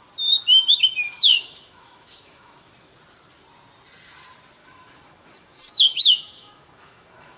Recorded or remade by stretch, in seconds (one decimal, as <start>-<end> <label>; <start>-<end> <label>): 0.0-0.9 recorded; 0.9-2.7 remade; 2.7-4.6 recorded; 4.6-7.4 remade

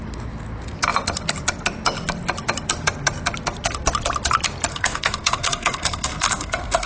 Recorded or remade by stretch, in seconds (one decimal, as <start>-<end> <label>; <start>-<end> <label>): 0.0-4.7 recorded; 4.7-6.9 remade

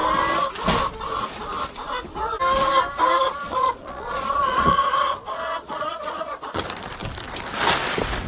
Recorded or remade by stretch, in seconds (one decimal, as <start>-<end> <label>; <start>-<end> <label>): 0.0-3.4 recorded; 3.4-6.6 remade; 6.6-8.3 recorded

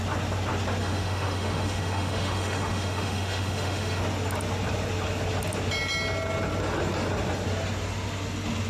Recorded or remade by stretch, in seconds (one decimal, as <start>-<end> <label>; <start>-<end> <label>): 0.0-0.8 recorded; 0.8-4.0 remade; 4.0-8.7 recorded

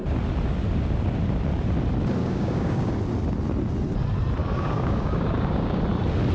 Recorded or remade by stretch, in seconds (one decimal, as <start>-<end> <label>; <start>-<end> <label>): 0.0-2.2 recorded; 2.2-2.9 remade; 2.9-4.4 recorded; 4.4-5.8 remade; 5.8-6.3 recorded

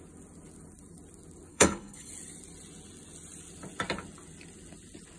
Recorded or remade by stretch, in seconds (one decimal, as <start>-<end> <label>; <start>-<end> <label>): 0.0-1.5 recorded; 1.5-2.1 remade; 2.1-5.2 recorded

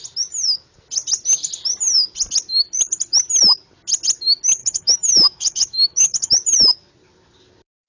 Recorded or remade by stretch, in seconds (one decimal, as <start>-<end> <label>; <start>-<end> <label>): 0.0-4.6 recorded; 4.6-6.3 remade; 6.3-7.9 recorded